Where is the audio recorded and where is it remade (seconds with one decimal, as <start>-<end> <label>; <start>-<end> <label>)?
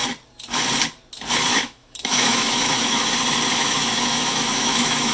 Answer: 0.0-1.5 recorded; 1.5-3.0 remade; 3.0-3.5 recorded; 3.5-5.1 remade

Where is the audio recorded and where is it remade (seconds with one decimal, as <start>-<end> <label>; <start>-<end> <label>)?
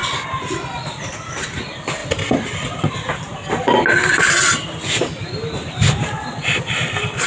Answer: 0.0-7.3 recorded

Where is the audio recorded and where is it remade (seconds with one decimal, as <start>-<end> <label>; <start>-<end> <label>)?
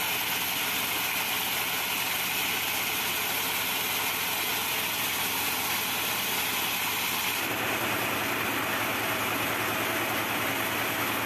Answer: 0.0-11.3 recorded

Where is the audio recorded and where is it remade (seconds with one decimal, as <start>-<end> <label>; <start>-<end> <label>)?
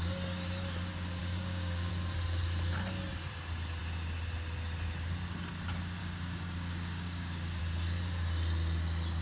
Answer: 0.0-1.2 recorded; 1.2-1.9 remade; 1.9-6.0 recorded; 6.0-7.6 remade; 7.6-9.2 recorded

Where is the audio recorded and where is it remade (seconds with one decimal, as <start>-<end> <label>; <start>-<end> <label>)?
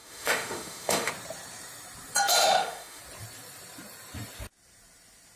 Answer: 0.0-1.1 remade; 1.1-2.4 recorded; 2.4-3.0 remade; 3.0-5.4 recorded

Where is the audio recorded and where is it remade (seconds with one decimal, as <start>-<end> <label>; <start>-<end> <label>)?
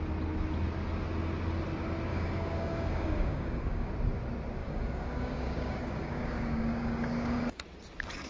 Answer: 0.0-2.1 recorded; 2.1-3.9 remade; 3.9-4.6 recorded; 4.6-7.6 remade; 7.6-8.3 recorded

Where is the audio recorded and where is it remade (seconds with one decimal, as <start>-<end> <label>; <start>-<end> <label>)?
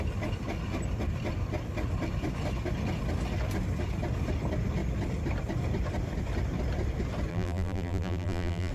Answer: 0.0-7.3 recorded; 7.3-8.7 remade